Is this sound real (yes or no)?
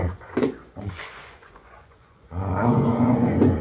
no